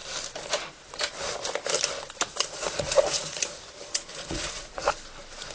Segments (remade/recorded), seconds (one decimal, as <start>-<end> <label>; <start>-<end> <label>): 0.0-2.5 recorded; 2.5-3.4 remade; 3.4-4.1 recorded; 4.1-4.9 remade; 4.9-5.5 recorded